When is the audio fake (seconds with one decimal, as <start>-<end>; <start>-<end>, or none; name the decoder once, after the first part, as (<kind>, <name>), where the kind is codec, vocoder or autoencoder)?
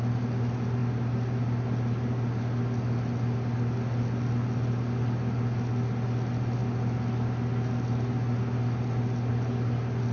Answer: none